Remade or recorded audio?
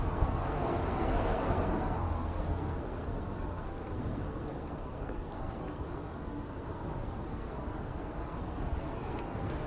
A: remade